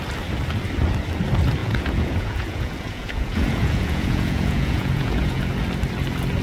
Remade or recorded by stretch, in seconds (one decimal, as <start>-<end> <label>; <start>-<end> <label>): 0.0-1.6 recorded; 1.6-5.4 remade; 5.4-6.4 recorded